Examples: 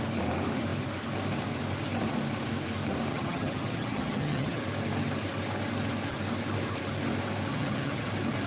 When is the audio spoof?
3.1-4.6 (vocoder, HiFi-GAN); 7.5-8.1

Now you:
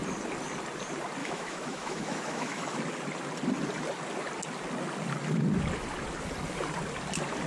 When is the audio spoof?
1.2-2.8 (autoencoder, DAC-VAE)

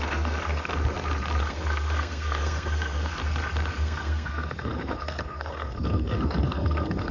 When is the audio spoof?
0.0-0.7 (codec, SNAC); 1.4-3.2; 3.7-7.1

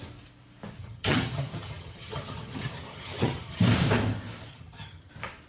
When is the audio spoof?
0.8-3.6 (vocoder, HiFi-GAN); 4.5-5.1

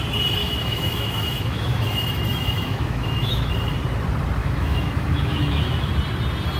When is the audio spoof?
0.4-3.5 (autoencoder, DAC-VAE); 4.4-5.9

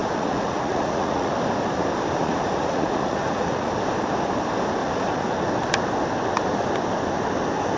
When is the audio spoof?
0.0-1.3 (vocoder, Vocos); 2.2-3.7; 4.8-5.3